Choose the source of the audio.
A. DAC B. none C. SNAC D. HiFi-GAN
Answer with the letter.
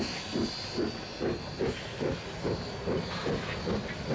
B